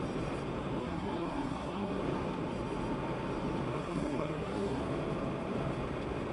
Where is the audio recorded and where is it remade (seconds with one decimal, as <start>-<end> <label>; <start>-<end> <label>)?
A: 0.0-0.8 recorded; 0.8-2.0 remade; 2.0-3.7 recorded; 3.7-4.8 remade; 4.8-6.3 recorded

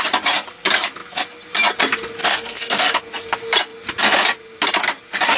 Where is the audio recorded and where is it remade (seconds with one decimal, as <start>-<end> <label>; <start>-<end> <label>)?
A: 0.0-2.2 recorded; 2.2-2.9 remade; 2.9-5.4 recorded

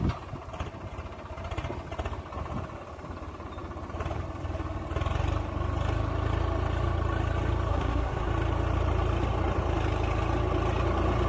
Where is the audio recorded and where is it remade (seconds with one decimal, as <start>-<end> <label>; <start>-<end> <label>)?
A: 0.0-7.7 recorded; 7.7-8.3 remade; 8.3-11.3 recorded

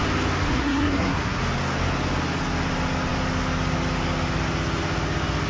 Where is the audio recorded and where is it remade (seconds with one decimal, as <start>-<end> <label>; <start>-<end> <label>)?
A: 0.0-0.5 recorded; 0.5-1.4 remade; 1.4-5.5 recorded

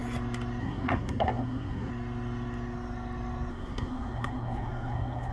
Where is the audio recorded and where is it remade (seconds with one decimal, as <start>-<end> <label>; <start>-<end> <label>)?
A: 0.0-0.6 recorded; 0.6-1.9 remade; 1.9-3.5 recorded; 3.5-5.3 remade

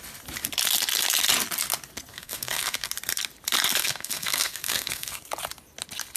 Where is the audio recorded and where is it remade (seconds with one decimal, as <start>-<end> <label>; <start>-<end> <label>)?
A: 0.0-2.1 recorded; 2.1-2.9 remade; 2.9-3.8 recorded; 3.8-5.2 remade; 5.2-6.2 recorded

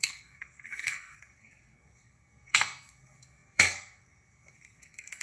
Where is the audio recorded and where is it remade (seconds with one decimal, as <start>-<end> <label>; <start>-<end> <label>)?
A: 0.0-5.2 remade

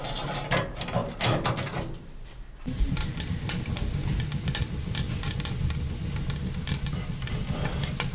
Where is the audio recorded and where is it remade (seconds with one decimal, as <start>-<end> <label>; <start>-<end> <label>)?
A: 0.0-8.1 recorded